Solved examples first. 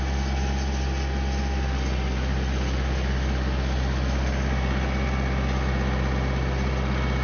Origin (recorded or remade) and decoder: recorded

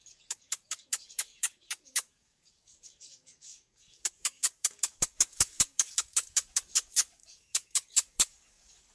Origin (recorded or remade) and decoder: remade, codec, DAC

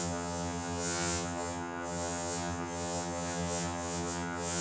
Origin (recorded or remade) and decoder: remade, vocoder, HiFi-GAN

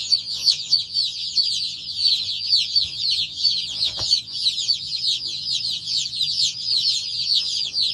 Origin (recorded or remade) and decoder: remade, vocoder, Vocos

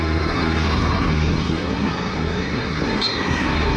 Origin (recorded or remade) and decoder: remade, codec, SNAC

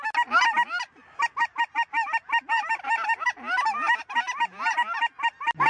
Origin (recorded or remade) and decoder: recorded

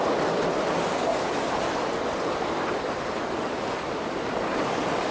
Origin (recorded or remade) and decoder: recorded